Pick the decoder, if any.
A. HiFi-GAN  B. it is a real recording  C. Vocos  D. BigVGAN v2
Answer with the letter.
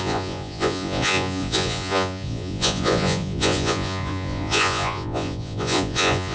C